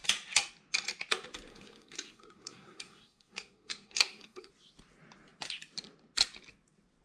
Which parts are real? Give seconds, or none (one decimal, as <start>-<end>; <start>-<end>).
0.0-1.5; 4.5-7.0